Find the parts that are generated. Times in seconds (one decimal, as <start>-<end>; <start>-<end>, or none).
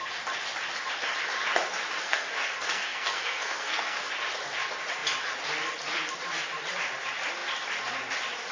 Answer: 2.0-4.1